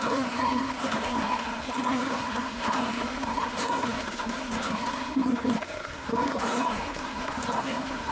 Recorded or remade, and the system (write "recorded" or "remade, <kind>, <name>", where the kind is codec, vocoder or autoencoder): remade, codec, SNAC